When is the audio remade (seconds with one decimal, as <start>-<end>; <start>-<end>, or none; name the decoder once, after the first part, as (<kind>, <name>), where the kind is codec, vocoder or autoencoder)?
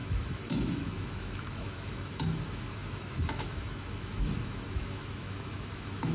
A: 0.0-6.1 (autoencoder, DAC-VAE)